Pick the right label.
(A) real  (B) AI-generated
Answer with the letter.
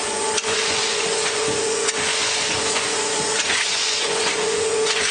B